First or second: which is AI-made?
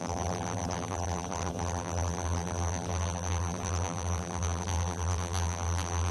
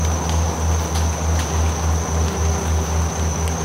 first